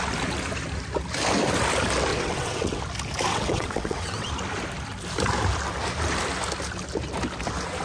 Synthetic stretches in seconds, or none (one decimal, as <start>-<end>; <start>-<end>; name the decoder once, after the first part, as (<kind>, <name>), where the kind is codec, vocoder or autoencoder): 2.1-2.8 (vocoder, WaveNeXt); 3.3-4.3